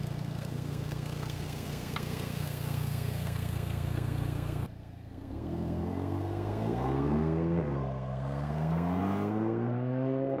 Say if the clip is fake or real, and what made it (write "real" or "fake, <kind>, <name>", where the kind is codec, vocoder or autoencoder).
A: fake, codec, SNAC